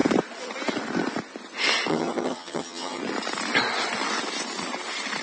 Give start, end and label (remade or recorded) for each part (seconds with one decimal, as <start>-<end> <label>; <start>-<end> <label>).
0.0-1.9 recorded; 1.9-3.0 remade; 3.0-5.2 recorded

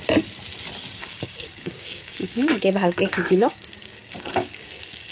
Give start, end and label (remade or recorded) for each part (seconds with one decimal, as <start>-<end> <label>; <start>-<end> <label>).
0.0-1.0 recorded; 1.0-5.1 remade

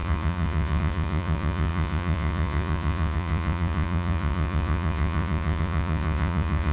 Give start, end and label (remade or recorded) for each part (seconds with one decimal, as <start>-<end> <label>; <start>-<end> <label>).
0.0-6.7 remade

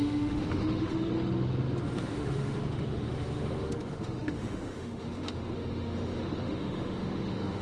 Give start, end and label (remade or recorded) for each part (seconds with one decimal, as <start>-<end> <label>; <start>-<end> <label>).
0.0-1.1 remade; 1.1-2.0 recorded; 2.0-7.6 remade

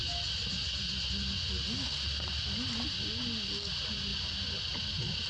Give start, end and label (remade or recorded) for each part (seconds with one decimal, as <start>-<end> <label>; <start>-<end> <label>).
0.0-5.3 recorded

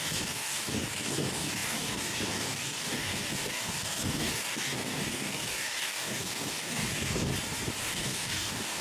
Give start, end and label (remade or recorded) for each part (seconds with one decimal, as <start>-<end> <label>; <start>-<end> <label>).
0.0-7.3 remade; 7.3-7.8 recorded; 7.8-8.8 remade

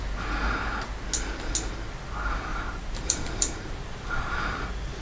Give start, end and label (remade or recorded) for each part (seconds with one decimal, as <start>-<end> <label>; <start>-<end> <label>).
0.0-2.5 recorded; 2.5-4.6 remade; 4.6-5.0 recorded

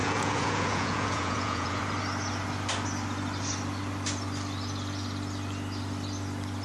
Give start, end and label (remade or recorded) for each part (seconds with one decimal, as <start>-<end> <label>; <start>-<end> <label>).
0.0-1.8 remade; 1.8-6.6 recorded